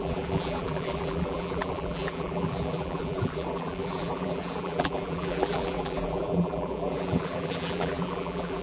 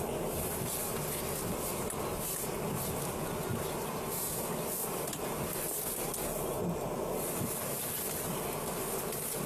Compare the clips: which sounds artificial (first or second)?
first